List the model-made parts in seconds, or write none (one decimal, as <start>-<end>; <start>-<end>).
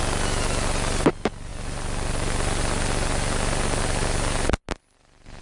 none